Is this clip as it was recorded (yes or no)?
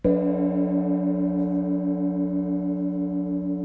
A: yes